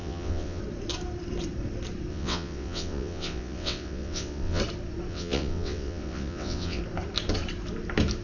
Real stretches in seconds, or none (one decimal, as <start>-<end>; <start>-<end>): 0.6-2.1; 4.6-5.1; 6.8-8.2